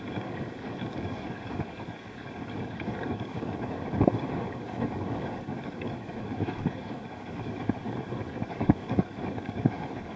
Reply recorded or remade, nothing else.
remade